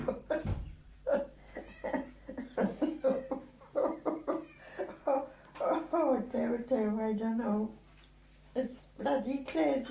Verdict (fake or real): real